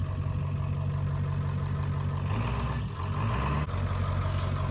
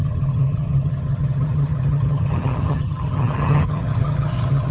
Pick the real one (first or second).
first